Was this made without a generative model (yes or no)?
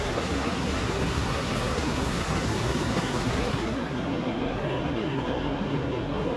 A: no